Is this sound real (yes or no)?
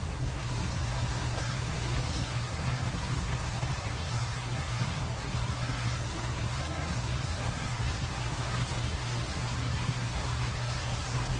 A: no